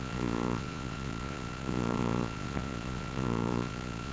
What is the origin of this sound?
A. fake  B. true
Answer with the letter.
A